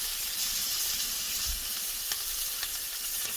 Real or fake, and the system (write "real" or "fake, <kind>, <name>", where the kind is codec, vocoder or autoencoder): fake, vocoder, BigVGAN v2